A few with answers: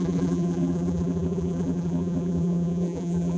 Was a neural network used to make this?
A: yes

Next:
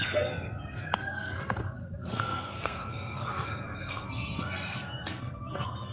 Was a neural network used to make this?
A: yes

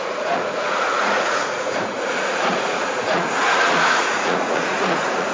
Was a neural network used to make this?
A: yes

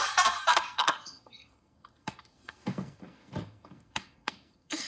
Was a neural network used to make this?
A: yes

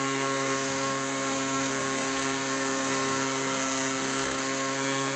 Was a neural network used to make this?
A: yes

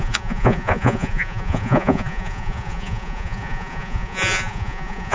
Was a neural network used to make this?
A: yes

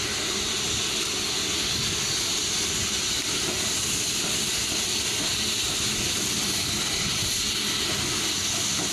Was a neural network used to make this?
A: no